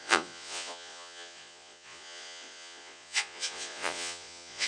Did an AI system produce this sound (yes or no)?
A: yes